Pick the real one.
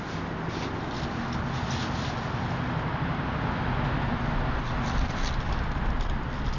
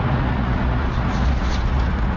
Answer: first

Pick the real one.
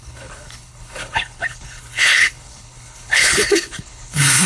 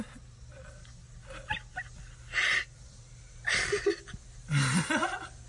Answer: second